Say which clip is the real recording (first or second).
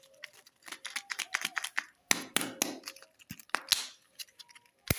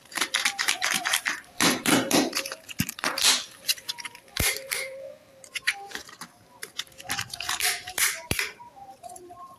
first